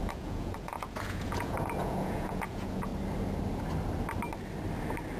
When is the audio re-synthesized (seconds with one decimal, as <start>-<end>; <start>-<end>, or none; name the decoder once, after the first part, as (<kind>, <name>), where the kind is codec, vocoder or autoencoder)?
0.0-2.9 (vocoder, Vocos)